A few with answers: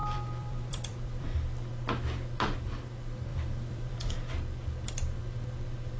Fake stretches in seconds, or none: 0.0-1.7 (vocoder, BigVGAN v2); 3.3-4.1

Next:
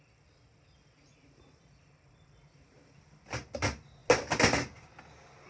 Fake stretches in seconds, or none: none

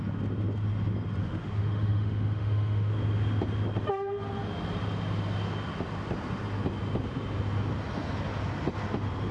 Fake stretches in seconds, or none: 1.2-2.9 (autoencoder, DAC-VAE)

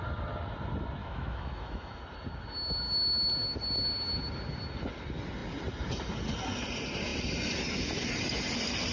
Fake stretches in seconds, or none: 1.0-2.0 (autoencoder, DAC-VAE)

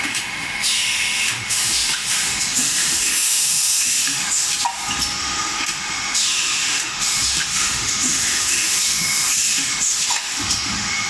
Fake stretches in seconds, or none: 0.0-4.5 (autoencoder, DAC-VAE); 5.2-11.1

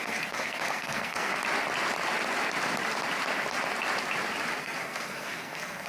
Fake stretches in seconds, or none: 0.0-1.3 (codec, SNAC); 4.6-5.9